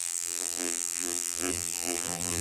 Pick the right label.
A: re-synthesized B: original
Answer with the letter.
A